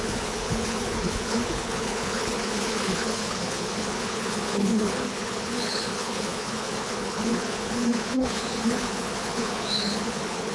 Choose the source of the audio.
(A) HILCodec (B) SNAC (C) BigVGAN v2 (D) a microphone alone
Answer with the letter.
A